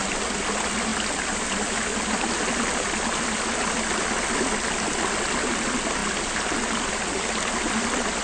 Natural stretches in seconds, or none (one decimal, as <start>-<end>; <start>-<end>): 0.0-8.2